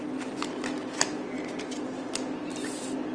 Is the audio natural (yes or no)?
yes